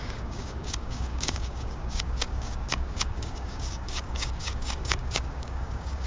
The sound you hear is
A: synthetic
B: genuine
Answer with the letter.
A